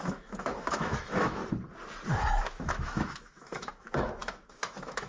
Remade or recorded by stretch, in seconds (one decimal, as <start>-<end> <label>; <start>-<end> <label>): 0.0-1.4 remade; 1.4-2.4 recorded; 2.4-5.1 remade